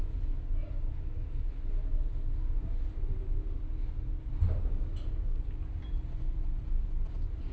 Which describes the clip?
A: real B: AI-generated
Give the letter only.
A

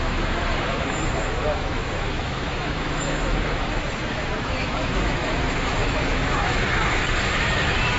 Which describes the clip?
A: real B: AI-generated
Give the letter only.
B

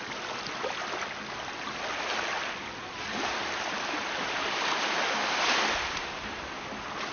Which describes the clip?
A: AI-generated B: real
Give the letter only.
B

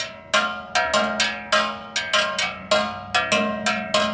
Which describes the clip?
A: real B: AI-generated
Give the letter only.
A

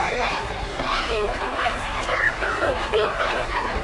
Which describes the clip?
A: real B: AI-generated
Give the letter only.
B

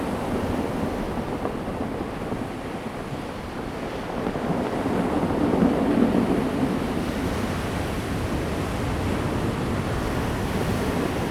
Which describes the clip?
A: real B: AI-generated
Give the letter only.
A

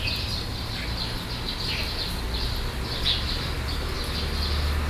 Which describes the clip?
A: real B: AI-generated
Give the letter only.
A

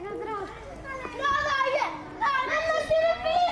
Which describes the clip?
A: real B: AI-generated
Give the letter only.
A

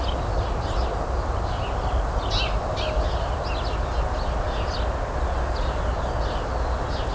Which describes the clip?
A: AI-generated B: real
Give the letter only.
B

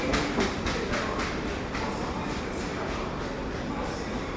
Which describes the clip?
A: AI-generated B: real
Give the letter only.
B